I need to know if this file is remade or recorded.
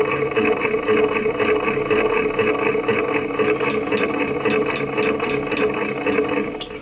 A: recorded